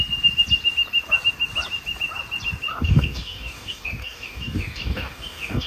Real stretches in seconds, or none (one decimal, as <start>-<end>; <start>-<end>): 0.0-2.7